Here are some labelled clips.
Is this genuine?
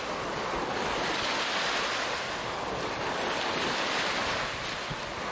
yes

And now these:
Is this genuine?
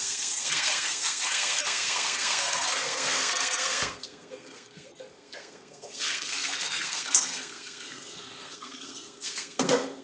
no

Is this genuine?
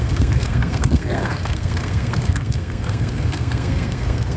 no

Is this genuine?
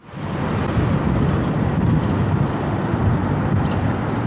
yes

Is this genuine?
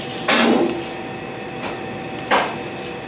yes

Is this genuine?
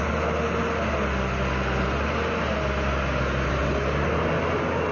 yes